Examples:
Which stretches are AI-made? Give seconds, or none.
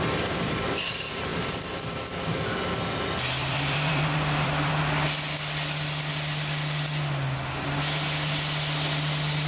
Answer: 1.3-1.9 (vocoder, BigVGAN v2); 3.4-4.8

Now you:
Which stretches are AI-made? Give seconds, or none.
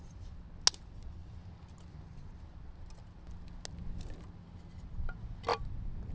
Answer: none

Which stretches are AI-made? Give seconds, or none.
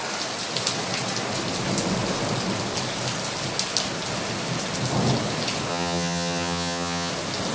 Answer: 5.7-7.1 (vocoder, HiFi-GAN)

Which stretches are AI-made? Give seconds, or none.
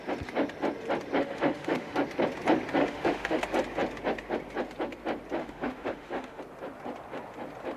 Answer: 1.2-2.0 (autoencoder, DAC-VAE); 2.8-3.4; 5.4-6.4